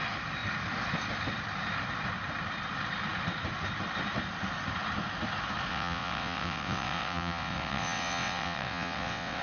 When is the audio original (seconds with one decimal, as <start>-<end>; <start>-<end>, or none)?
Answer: 0.0-5.7